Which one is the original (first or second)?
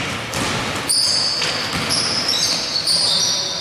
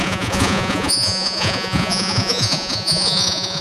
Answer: first